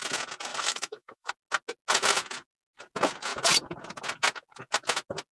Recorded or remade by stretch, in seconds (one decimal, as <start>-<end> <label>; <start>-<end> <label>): 0.0-0.5 recorded; 0.5-1.3 remade; 1.3-5.3 recorded